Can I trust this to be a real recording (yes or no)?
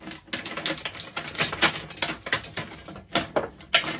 yes